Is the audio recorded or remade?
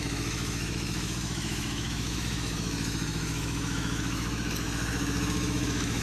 remade